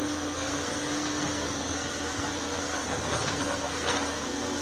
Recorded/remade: remade